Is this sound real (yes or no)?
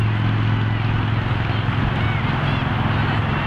yes